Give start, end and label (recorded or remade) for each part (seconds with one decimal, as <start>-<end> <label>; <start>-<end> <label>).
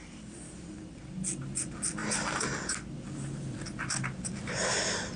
0.0-5.2 recorded